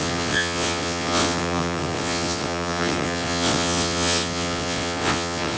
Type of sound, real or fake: fake